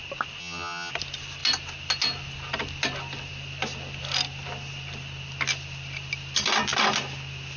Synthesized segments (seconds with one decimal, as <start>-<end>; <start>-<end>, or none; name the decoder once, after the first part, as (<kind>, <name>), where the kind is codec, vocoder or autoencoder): 0.4-0.9 (vocoder, HiFi-GAN)